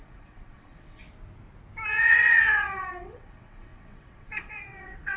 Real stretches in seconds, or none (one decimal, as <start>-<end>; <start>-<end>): 1.0-2.0

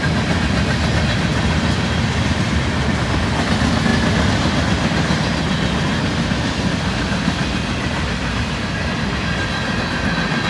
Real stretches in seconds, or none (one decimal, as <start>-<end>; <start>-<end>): 0.0-10.5

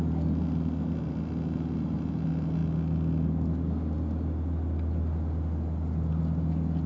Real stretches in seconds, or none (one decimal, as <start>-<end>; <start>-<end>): 0.0-6.9